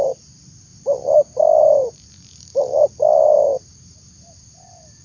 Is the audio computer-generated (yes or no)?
no